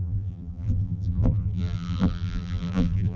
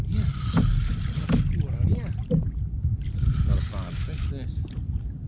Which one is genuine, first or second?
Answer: second